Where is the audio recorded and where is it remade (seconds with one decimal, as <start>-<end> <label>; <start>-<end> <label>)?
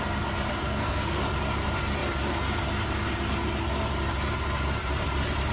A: 0.0-0.5 recorded; 0.5-1.2 remade; 1.2-5.5 recorded